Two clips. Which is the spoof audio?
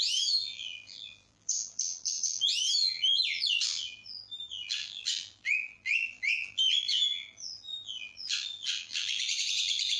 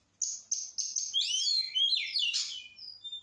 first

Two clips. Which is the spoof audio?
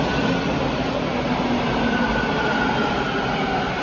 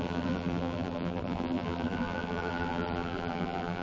second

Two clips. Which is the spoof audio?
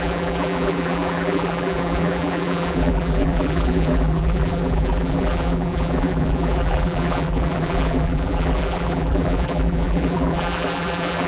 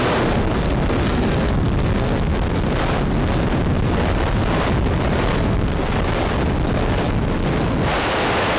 first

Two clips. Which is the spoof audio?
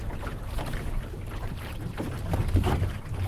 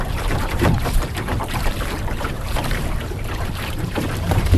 second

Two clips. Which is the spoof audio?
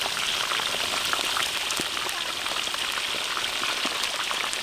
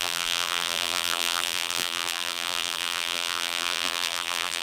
second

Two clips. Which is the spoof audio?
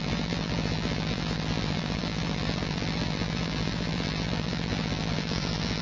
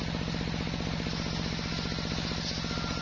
first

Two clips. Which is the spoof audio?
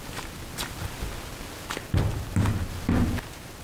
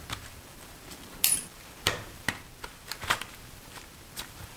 second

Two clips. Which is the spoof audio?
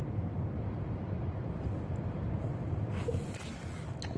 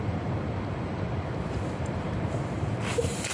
second